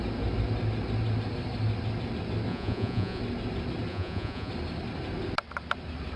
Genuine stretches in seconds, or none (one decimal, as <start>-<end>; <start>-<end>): 0.0-2.5; 3.2-3.9; 4.5-6.2

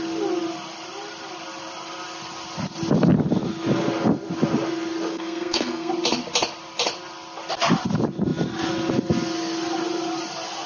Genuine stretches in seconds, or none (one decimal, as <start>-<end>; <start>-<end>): 0.0-5.1; 5.9-10.7

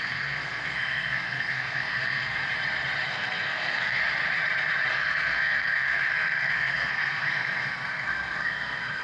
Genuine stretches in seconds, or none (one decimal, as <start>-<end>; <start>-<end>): 2.4-3.1; 4.0-4.9

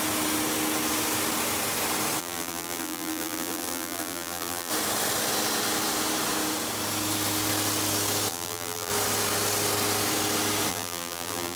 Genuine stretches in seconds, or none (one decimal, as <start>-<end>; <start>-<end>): 0.0-2.2; 4.7-8.3; 8.9-10.7

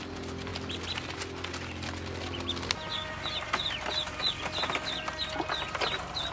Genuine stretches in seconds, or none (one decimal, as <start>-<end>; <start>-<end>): 0.0-6.3

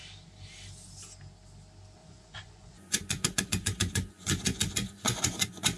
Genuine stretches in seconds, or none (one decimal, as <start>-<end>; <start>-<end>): 0.0-2.0

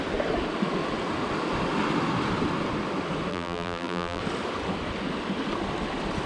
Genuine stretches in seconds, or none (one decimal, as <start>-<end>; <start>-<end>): 0.0-3.3; 4.2-6.3

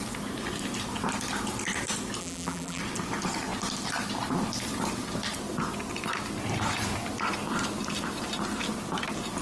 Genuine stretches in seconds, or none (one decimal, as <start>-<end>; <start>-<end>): 0.0-2.2; 2.8-9.4